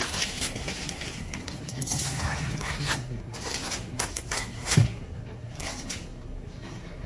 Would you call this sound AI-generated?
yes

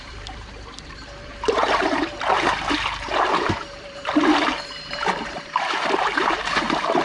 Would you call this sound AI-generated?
yes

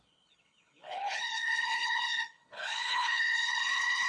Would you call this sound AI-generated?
yes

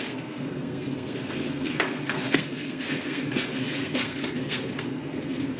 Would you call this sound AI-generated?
yes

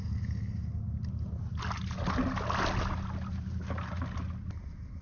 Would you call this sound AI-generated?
no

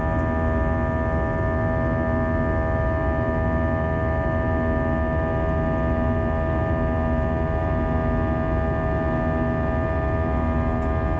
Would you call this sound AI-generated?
no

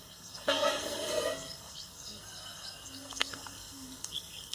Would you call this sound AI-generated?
yes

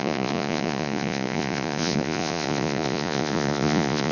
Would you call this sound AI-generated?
yes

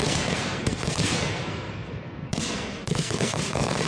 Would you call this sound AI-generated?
yes